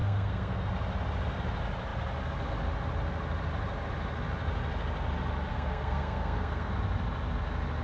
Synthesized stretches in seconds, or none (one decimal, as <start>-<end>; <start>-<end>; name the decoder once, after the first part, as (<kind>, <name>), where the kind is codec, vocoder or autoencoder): 0.0-0.7 (codec, SNAC); 5.5-6.7